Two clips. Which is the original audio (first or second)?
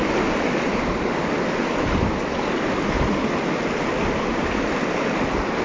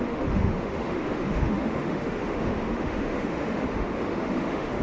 first